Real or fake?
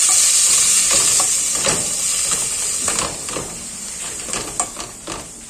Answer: real